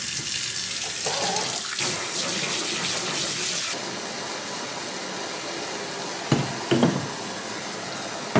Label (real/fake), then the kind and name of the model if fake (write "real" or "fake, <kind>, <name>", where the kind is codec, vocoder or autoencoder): real